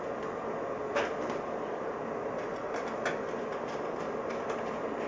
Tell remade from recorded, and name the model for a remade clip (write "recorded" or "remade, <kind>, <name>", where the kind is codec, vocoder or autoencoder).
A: recorded